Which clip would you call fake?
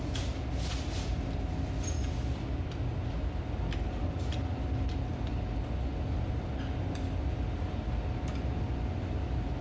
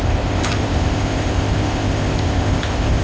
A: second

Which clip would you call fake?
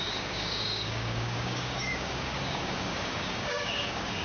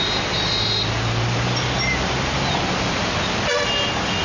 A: first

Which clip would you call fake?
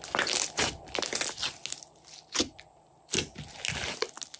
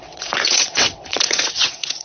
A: second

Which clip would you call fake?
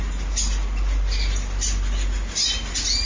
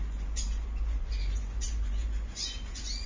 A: second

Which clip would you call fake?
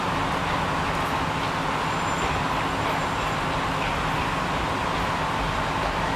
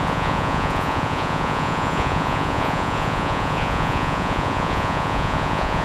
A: second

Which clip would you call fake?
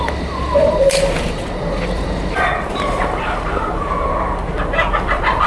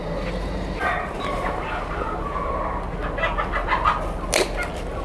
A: first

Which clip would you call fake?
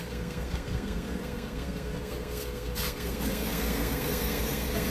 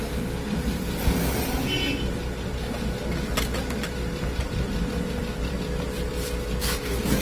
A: first